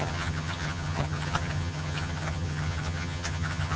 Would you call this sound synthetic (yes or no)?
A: yes